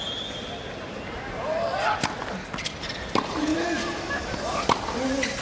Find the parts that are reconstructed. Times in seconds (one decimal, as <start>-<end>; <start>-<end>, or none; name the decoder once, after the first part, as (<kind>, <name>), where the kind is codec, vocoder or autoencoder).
none